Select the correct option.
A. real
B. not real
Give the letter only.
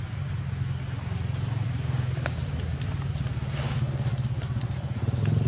A